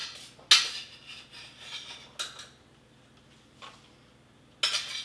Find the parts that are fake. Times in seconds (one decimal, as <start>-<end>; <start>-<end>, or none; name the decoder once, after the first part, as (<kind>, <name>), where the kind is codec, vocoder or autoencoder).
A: none

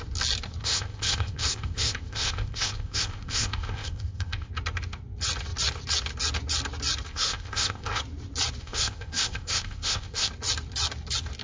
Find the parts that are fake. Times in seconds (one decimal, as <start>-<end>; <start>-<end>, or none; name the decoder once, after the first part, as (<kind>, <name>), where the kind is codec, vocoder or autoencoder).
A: 0.6-4.5 (codec, ZipCodec); 7.1-8.0; 8.6-10.3